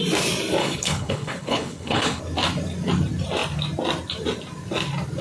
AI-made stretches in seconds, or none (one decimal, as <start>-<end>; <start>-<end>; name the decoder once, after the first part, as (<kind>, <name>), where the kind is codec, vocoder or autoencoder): 0.6-2.2 (codec, HILCodec)